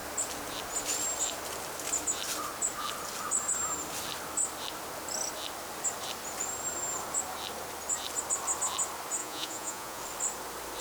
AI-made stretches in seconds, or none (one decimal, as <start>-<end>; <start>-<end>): 9.2-10.0